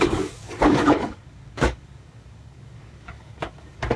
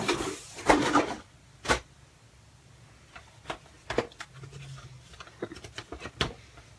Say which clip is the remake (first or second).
first